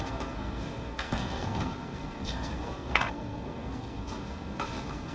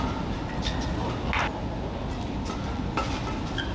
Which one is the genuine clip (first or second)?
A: second